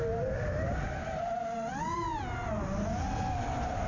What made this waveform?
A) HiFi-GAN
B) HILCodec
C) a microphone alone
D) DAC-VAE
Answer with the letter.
C